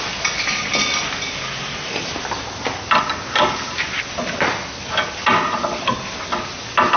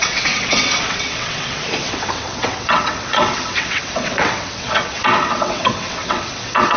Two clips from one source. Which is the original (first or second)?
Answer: first